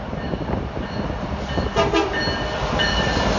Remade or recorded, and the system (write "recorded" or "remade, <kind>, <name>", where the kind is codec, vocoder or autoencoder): recorded